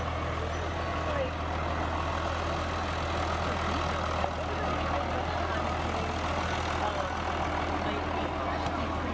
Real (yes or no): yes